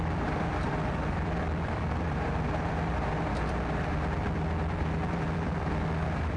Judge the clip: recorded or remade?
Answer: remade